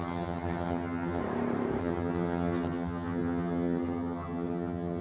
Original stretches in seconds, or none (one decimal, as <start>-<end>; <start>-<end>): 1.2-1.8